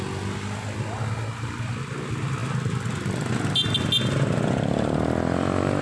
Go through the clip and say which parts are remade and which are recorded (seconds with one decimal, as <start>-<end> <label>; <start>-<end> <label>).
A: 0.0-5.8 recorded